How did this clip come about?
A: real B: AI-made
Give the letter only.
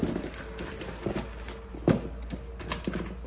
A